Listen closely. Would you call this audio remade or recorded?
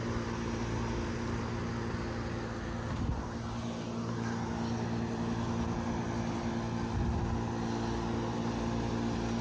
recorded